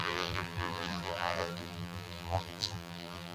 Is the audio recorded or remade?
remade